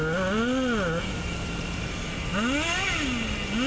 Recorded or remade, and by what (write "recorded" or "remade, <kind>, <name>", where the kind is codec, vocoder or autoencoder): recorded